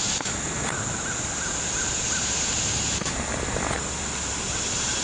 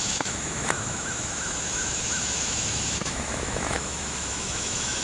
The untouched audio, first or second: first